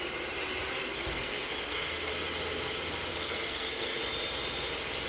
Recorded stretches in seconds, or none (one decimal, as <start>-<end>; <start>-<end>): 0.0-0.7; 2.1-3.1; 4.0-5.1